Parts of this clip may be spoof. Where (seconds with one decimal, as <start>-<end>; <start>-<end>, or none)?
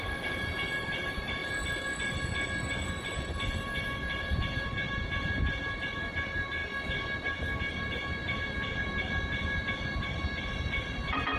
0.0-1.4; 4.2-6.6; 7.8-11.4